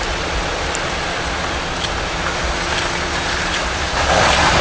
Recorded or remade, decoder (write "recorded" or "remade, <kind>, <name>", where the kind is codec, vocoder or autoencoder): remade, vocoder, BigVGAN v2